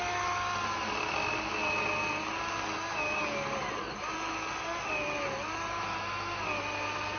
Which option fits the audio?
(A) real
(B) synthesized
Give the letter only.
A